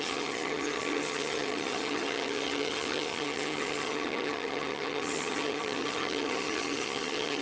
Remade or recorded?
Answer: remade